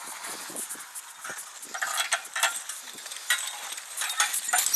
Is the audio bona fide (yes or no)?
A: yes